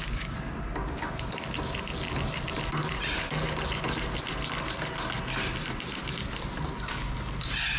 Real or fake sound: real